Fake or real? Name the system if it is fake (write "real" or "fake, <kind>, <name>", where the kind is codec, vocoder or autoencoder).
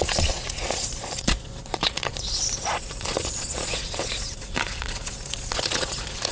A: fake, vocoder, Vocos